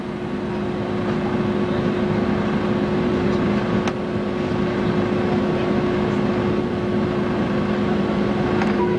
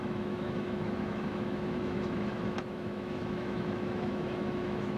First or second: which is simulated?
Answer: second